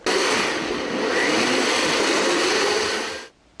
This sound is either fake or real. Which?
real